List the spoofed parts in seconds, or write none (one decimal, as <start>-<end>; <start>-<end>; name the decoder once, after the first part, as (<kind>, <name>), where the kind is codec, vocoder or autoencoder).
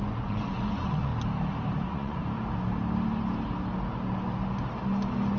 0.0-1.1 (vocoder, Vocos); 1.8-2.2